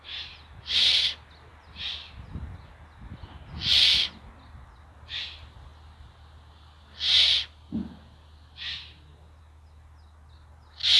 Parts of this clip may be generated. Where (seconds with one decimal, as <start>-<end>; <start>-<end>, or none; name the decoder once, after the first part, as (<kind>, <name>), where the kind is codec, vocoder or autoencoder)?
none